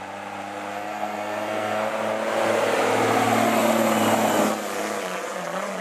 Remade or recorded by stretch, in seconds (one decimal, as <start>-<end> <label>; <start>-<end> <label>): 0.0-0.7 recorded; 0.7-1.9 remade; 1.9-5.8 recorded